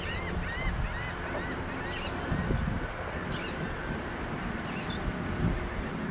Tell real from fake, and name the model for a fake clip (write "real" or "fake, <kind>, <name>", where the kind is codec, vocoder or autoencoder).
real